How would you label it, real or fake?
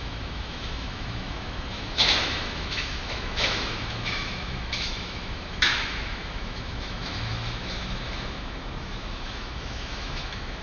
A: fake